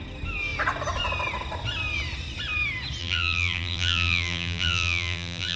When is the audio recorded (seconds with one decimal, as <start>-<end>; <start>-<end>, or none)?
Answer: 0.0-3.0